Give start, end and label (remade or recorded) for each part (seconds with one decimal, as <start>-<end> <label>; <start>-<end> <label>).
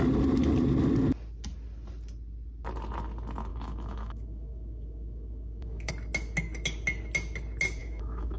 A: 0.0-3.5 recorded; 3.5-5.9 remade; 5.9-7.8 recorded; 7.8-8.4 remade